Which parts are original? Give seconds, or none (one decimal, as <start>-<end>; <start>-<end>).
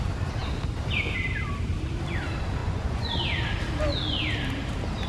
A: 0.0-2.6; 3.1-5.1